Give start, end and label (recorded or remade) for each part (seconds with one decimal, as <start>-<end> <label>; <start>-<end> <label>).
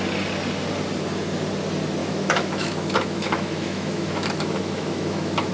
0.0-2.0 recorded; 2.0-5.5 remade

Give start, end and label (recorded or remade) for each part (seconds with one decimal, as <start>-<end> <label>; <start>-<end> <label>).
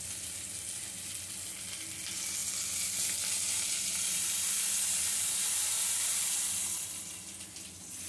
0.0-8.1 recorded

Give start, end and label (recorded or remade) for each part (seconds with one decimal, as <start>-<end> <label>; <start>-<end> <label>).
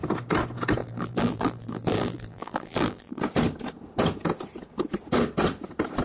0.0-0.8 recorded; 0.8-3.2 remade; 3.2-6.0 recorded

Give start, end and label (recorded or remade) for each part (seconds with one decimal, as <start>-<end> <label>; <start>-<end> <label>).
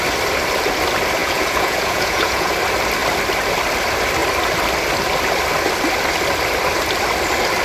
0.0-1.2 recorded; 1.2-2.5 remade; 2.5-7.6 recorded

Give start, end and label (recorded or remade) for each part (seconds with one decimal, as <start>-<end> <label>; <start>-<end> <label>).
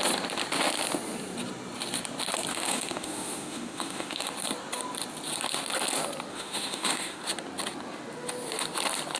0.0-2.5 recorded; 2.5-4.3 remade; 4.3-6.3 recorded; 6.3-7.2 remade; 7.2-9.2 recorded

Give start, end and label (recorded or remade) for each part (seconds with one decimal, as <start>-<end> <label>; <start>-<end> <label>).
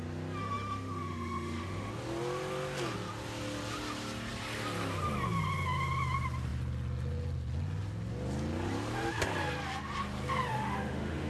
0.0-0.4 recorded; 0.4-1.9 remade; 1.9-10.5 recorded; 10.5-11.3 remade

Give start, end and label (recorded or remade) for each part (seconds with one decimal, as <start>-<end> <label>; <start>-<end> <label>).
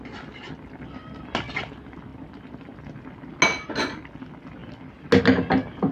0.0-5.9 recorded